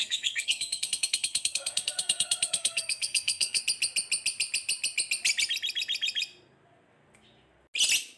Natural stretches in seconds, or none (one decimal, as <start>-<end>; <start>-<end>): 3.6-8.2